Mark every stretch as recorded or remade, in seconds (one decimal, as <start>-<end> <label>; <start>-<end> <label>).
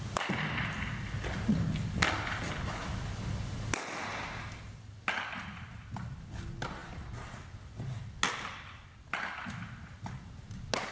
0.0-10.9 recorded